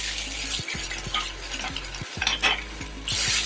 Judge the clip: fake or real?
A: real